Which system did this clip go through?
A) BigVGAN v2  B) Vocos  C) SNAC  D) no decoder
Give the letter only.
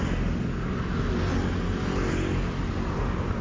D